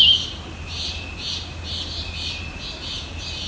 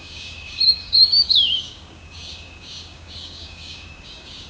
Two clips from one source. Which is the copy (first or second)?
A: second